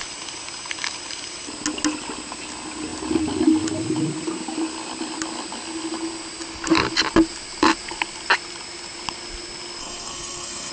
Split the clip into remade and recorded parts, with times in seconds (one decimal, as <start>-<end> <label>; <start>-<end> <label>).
0.0-9.8 recorded; 9.8-10.7 remade